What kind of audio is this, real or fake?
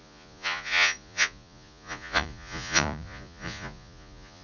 fake